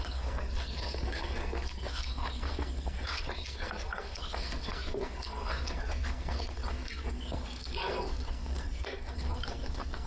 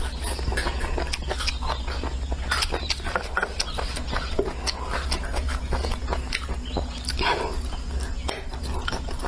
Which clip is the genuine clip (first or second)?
second